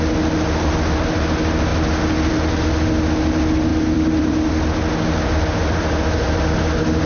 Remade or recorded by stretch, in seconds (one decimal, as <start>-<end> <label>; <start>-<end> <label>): 0.0-3.7 recorded; 3.7-4.5 remade; 4.5-5.6 recorded; 5.6-6.2 remade; 6.2-7.1 recorded